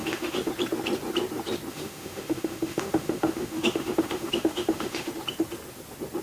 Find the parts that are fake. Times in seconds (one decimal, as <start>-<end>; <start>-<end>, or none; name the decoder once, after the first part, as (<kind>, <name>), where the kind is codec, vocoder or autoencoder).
0.0-0.5 (autoencoder, DAC-VAE); 1.7-5.1